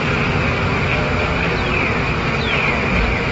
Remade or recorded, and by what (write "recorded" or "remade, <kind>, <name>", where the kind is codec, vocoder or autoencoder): recorded